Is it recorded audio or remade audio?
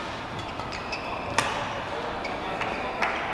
recorded